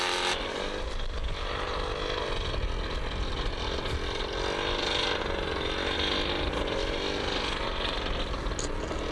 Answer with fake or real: real